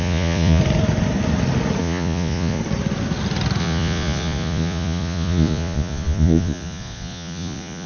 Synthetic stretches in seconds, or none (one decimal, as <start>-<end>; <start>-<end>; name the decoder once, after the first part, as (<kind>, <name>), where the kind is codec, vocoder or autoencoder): 0.0-0.6 (vocoder, Vocos); 1.8-2.6; 3.6-7.9